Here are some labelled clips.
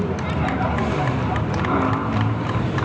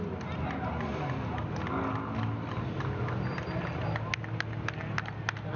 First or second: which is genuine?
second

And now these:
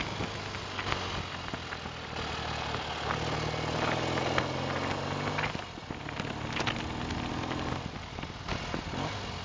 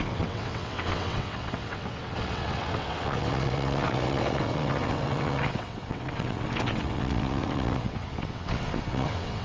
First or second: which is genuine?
first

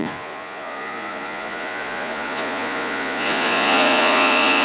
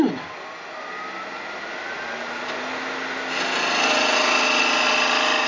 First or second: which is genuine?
second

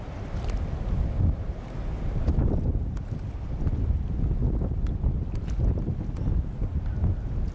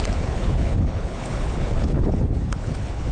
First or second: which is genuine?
first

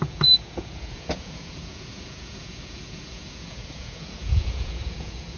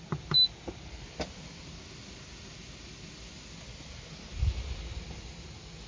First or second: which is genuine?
second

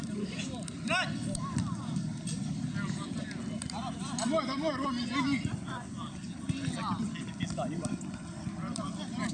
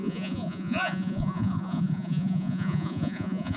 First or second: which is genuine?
first